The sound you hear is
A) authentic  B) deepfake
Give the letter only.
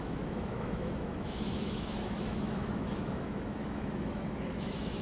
B